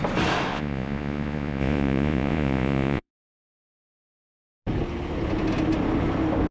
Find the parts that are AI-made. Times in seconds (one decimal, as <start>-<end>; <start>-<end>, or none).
0.5-3.1